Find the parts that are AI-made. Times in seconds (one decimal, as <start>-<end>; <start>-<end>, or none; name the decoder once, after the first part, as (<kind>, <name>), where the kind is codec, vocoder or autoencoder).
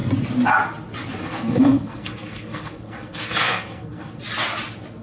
1.2-4.2 (codec, SNAC)